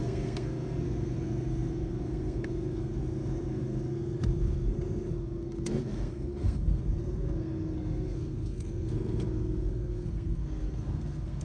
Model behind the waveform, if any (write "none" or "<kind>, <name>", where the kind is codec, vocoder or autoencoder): codec, SNAC